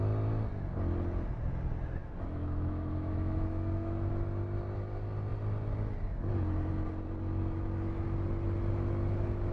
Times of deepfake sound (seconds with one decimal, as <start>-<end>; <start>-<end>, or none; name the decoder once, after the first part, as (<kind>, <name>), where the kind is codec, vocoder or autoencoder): 2.0-4.1 (autoencoder, DAC-VAE)